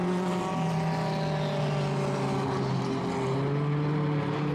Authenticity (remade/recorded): recorded